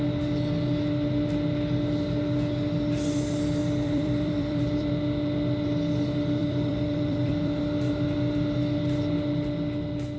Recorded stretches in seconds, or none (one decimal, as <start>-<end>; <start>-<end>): 0.0-3.6; 4.9-6.4; 7.6-10.2

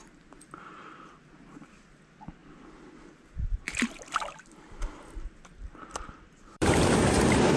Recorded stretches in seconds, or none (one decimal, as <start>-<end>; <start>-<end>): 0.0-2.4; 7.0-7.6

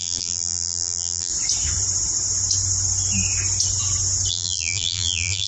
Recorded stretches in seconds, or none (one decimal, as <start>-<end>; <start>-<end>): 1.3-4.3

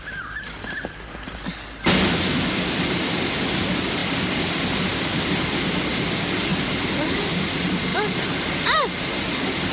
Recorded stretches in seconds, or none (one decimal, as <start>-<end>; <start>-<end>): 0.0-4.0; 5.7-9.7

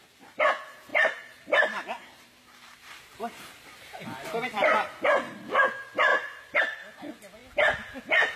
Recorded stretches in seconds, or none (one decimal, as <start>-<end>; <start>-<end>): 0.0-0.9; 5.5-6.1; 6.6-8.4

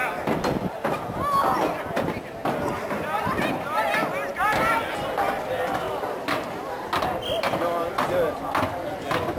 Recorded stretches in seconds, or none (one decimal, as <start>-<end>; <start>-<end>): 0.0-2.4; 3.5-4.3; 8.1-9.4

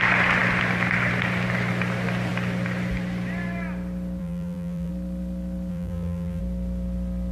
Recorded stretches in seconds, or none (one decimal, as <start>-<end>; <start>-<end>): 0.0-4.2; 4.9-5.7; 6.4-7.3